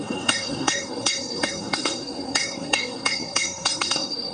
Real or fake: fake